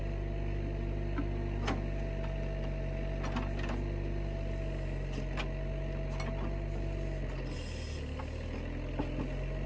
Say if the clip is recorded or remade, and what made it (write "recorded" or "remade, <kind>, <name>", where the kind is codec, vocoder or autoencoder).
recorded